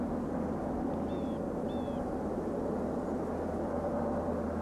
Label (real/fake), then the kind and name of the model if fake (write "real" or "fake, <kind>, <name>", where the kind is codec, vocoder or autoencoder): real